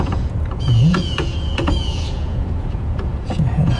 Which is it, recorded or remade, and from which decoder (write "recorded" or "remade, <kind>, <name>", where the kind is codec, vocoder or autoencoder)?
remade, vocoder, Vocos